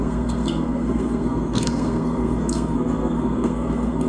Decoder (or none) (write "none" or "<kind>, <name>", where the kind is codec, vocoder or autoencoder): codec, SNAC